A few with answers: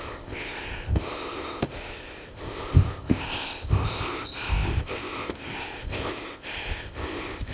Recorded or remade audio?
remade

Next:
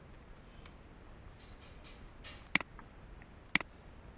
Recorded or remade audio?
recorded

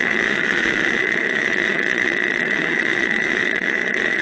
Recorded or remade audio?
remade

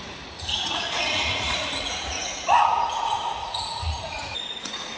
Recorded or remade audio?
remade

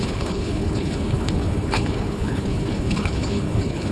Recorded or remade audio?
remade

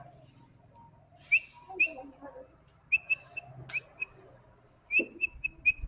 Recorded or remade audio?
recorded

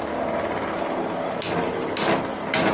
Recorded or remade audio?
recorded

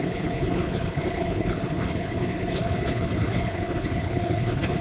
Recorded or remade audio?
remade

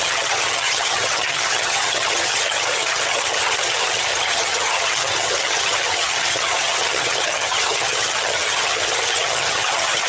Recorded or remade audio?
remade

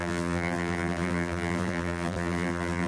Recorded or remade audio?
remade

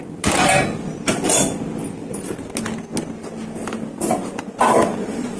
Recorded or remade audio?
recorded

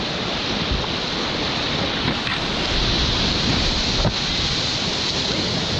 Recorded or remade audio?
recorded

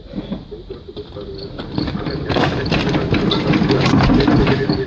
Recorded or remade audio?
remade